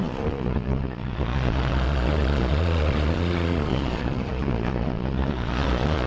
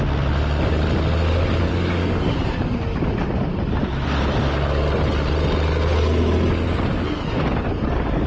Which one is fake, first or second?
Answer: first